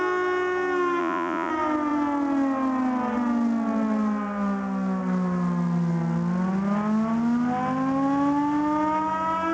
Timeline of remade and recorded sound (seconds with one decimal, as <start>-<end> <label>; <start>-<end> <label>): 0.0-1.0 recorded; 1.0-1.5 remade; 1.5-9.5 recorded